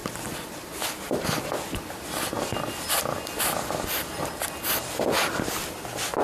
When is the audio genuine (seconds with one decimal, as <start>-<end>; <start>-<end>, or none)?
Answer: 0.0-6.2